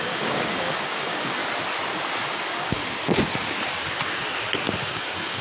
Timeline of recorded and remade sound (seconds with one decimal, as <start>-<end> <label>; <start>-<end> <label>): 0.0-1.4 remade; 1.4-2.2 recorded; 2.2-2.8 remade; 2.8-4.8 recorded; 4.8-5.4 remade